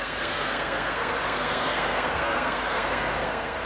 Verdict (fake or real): fake